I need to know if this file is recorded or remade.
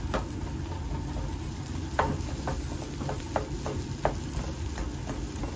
recorded